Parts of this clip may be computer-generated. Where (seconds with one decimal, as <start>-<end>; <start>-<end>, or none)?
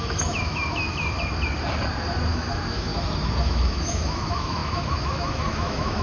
0.0-0.9; 2.3-2.9; 3.4-6.0